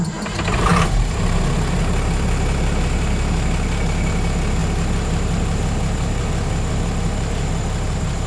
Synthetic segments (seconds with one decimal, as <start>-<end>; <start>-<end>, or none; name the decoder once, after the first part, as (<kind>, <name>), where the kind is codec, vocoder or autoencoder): none